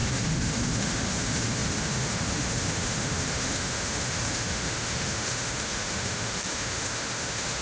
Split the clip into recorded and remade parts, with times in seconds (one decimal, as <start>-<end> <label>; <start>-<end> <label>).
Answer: 0.0-7.6 remade